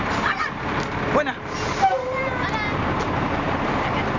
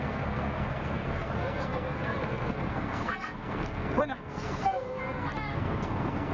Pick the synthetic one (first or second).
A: second